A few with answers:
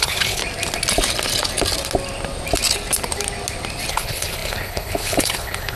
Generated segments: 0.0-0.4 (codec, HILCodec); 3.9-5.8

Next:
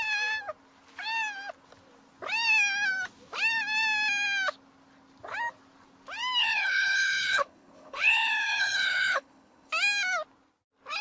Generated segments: 6.4-9.7 (codec, HILCodec)

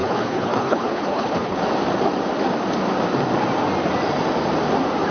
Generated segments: 0.0-1.6 (codec, HILCodec)

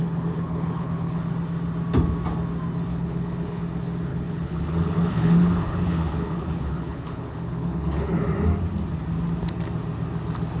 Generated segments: 0.0-1.3 (codec, HILCodec); 2.9-3.6; 4.1-8.2

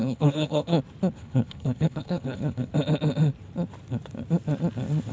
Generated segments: 0.0-0.7 (codec, HILCodec); 1.2-2.7